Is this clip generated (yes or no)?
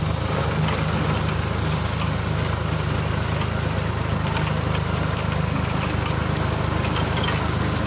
no